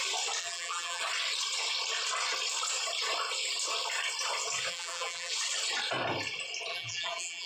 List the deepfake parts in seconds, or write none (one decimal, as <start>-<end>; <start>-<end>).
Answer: 0.4-1.0; 4.7-5.3; 6.7-7.5